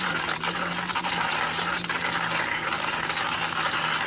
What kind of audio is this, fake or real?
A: real